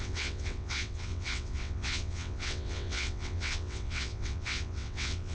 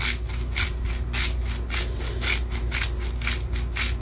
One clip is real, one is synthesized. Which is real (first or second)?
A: second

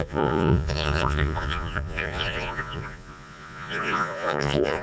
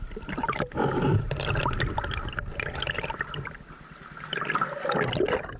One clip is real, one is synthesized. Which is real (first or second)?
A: second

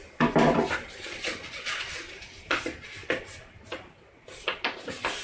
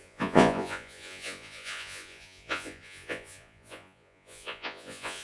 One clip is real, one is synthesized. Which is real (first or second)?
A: first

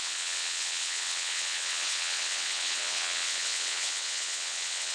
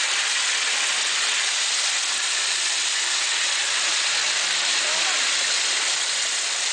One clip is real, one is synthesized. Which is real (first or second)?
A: second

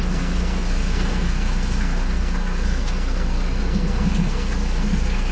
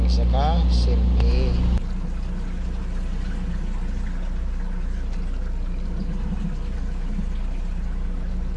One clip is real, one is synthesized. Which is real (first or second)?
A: second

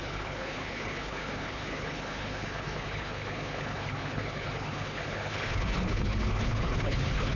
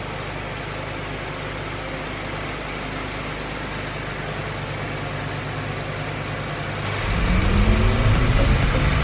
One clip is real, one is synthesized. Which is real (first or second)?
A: second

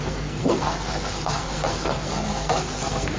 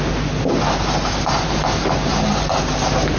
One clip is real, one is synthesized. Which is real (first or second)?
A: second